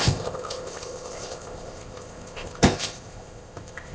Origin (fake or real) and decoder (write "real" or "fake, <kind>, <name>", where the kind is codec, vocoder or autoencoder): fake, codec, ZipCodec